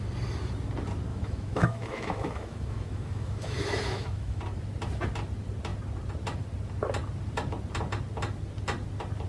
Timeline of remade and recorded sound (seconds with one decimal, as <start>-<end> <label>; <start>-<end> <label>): 0.0-1.1 recorded; 1.1-4.4 remade; 4.4-9.3 recorded